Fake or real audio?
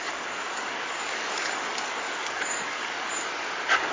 fake